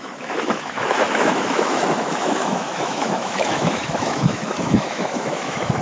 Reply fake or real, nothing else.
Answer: fake